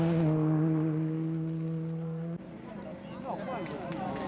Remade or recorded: recorded